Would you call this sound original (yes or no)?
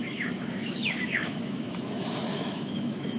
no